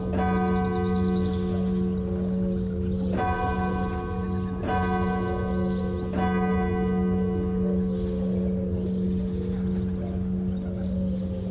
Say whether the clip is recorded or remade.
recorded